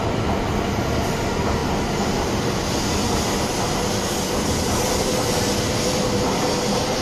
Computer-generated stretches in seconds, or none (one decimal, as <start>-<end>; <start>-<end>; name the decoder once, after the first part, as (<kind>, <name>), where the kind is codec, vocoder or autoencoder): none